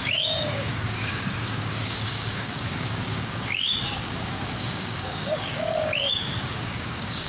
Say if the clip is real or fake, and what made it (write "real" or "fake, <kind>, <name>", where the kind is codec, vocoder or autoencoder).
fake, codec, DAC